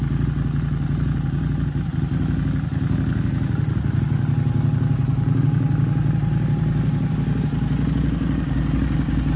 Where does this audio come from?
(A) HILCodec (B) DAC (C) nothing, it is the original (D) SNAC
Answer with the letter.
C